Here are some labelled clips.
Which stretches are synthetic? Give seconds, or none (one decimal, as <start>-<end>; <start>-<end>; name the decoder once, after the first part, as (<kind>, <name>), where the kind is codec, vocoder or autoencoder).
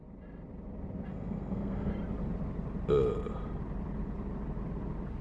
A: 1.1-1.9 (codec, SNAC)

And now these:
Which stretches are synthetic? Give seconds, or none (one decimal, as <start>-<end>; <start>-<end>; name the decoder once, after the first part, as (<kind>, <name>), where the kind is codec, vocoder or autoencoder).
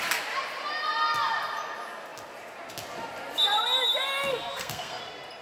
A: 4.3-5.0 (codec, SNAC)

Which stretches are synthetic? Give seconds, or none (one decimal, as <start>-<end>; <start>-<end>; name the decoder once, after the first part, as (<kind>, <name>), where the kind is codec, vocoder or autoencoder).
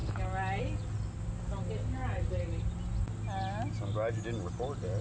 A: none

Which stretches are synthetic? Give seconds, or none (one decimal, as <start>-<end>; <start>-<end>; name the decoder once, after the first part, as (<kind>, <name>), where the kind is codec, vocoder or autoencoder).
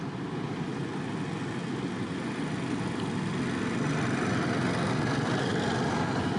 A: none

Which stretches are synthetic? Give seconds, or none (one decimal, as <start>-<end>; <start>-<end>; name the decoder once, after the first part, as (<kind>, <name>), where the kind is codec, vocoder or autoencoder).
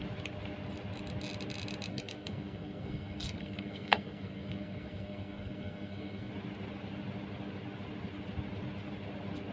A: 1.9-6.3 (codec, SNAC)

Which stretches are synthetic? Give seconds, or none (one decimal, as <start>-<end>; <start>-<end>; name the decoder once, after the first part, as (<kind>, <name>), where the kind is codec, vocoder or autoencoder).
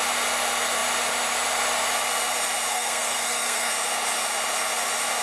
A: 2.7-3.7 (codec, SNAC)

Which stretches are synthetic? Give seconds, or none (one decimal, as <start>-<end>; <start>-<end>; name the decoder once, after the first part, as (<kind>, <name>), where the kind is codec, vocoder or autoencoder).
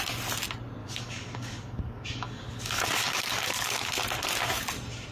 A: 0.8-3.9 (codec, DAC)